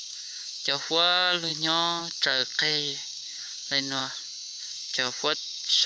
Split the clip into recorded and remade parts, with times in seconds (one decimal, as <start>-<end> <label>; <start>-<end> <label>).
0.0-1.5 remade; 1.5-2.0 recorded; 2.0-4.0 remade; 4.0-4.6 recorded; 4.6-5.9 remade